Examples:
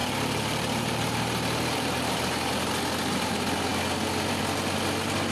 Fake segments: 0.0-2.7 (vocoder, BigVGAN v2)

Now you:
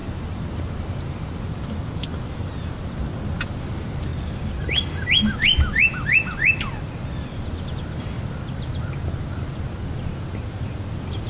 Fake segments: 0.0-1.4 (vocoder, BigVGAN v2)

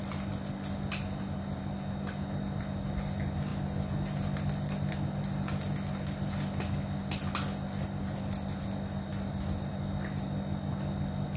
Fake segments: none

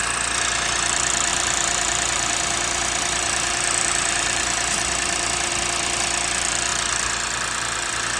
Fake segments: 1.3-5.5 (vocoder, BigVGAN v2)

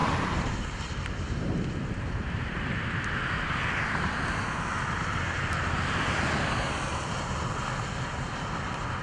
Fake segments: 0.0-3.7 (vocoder, BigVGAN v2)